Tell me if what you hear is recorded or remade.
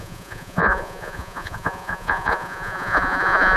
remade